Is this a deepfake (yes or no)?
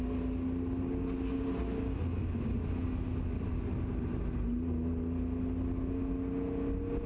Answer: no